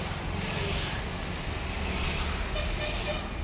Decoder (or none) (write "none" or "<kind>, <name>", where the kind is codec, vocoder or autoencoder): none